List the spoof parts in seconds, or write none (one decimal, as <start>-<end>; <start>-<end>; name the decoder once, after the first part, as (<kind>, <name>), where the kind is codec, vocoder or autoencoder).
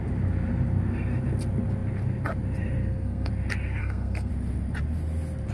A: 2.8-3.3 (codec, SNAC); 3.8-4.3